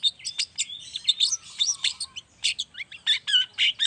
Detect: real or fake real